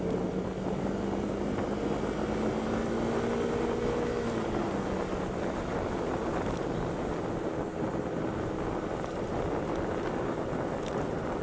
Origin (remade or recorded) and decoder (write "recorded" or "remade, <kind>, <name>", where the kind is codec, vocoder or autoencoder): recorded